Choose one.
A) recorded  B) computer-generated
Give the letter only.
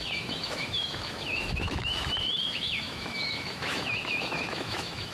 B